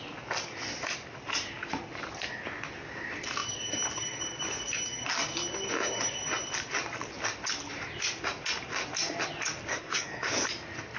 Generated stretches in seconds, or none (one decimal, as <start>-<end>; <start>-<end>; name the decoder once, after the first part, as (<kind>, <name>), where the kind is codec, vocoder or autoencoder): 9.7-10.3 (codec, SNAC)